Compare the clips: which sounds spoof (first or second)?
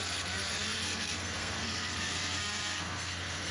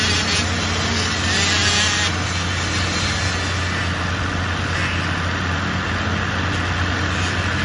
first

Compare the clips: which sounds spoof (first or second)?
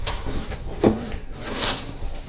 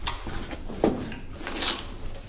first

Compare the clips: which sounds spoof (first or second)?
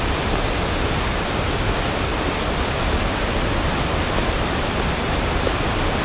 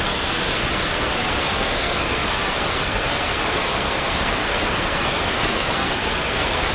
second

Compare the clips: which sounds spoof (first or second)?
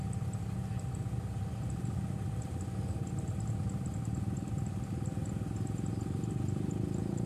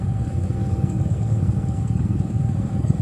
second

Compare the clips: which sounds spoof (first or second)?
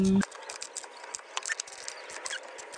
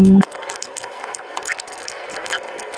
second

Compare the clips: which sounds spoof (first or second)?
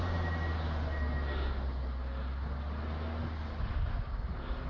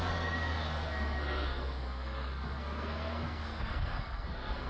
second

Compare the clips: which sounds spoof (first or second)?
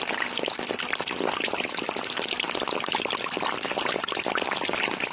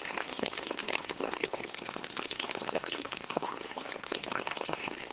second